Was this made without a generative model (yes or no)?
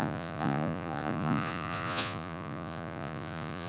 no